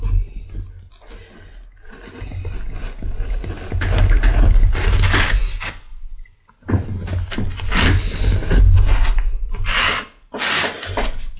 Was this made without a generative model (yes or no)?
yes